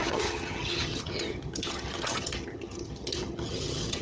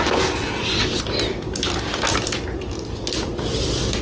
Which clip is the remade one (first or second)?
first